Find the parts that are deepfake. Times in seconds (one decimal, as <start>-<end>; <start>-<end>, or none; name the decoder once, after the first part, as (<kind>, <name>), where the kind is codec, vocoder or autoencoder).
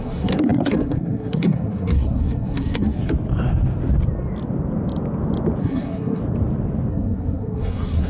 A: 0.0-3.0 (codec, SNAC); 5.6-6.2; 6.9-8.1